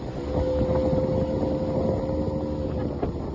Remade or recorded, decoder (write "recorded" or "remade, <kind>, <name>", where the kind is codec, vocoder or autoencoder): recorded